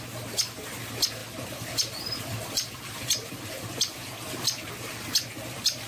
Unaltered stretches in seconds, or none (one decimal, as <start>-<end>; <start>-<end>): 0.0-1.2; 4.7-5.9